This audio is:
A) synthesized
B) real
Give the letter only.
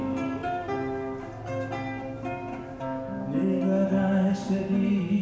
B